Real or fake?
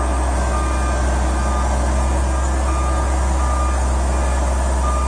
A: real